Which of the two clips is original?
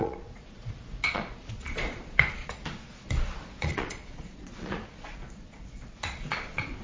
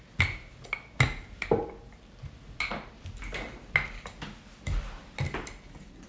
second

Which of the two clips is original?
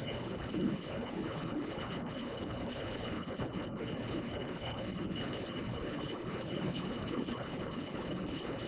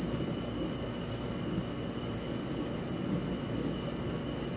second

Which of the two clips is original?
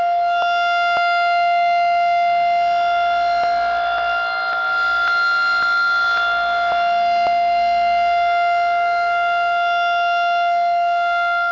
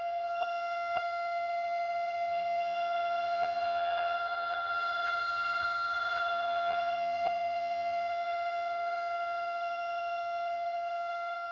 first